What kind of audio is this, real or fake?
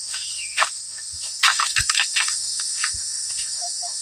fake